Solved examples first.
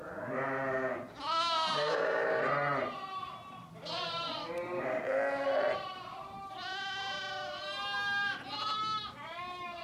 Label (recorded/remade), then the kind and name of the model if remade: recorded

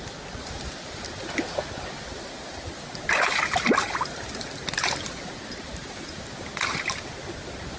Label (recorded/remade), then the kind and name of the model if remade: recorded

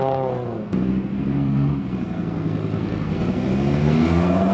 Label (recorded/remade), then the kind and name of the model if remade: remade, codec, SNAC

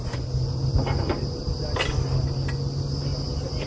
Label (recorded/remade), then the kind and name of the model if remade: recorded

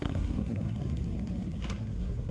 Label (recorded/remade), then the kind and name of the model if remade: remade, codec, SNAC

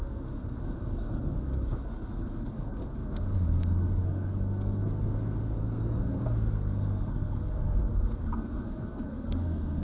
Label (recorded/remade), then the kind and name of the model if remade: remade, codec, SNAC